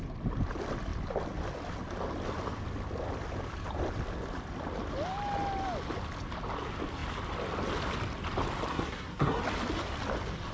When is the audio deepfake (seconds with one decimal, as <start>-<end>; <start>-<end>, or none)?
8.7-9.4